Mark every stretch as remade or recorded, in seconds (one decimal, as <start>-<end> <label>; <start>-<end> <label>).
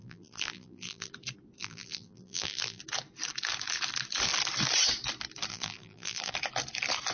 0.0-1.1 remade; 1.1-1.6 recorded; 1.6-2.8 remade; 2.8-5.5 recorded; 5.5-6.3 remade; 6.3-7.1 recorded